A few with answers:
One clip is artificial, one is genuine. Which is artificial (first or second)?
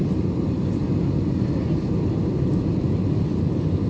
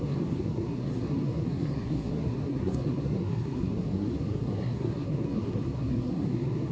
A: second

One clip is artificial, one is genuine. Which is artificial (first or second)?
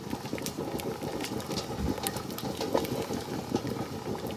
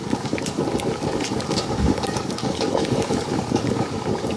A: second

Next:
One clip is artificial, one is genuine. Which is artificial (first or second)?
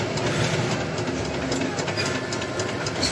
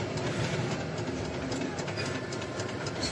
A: second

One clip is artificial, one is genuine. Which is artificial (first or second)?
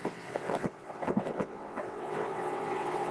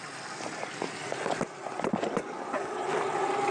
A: first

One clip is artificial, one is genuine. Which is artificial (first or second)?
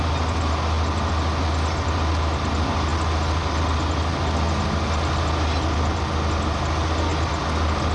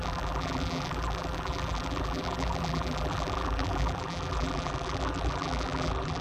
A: second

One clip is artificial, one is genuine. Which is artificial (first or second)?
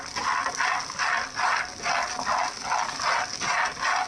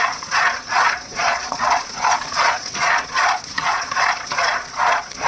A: second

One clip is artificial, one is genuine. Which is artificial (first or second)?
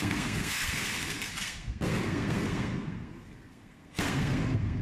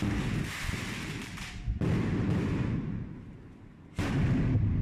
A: first